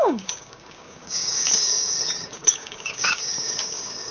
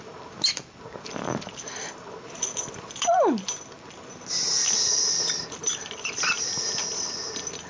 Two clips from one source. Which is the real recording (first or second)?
second